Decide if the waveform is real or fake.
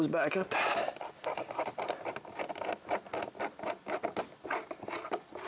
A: real